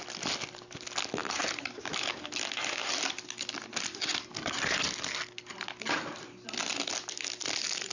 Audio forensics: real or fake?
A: real